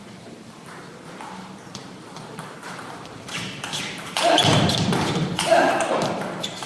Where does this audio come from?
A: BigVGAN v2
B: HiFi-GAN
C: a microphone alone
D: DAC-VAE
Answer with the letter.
A